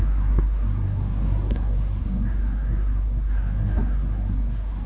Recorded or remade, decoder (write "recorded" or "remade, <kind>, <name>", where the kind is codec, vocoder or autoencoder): remade, codec, SNAC